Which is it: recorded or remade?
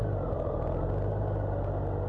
recorded